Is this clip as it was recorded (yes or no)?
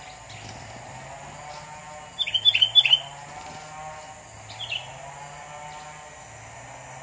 yes